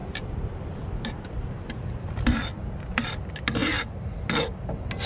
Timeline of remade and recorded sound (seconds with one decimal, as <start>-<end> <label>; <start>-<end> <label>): 0.0-5.1 recorded